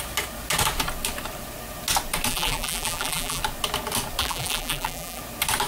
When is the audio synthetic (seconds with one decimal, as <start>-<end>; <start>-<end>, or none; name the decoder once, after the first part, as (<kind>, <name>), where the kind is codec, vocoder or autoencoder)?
2.3-3.4 (vocoder, BigVGAN v2); 4.2-5.2